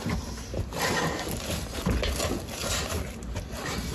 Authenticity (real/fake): real